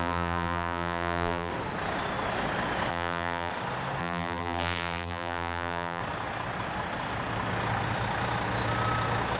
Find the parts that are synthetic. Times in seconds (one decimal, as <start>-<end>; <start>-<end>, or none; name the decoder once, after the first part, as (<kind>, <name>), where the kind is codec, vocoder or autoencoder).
0.0-1.5 (vocoder, BigVGAN v2); 2.9-3.5; 4.0-6.0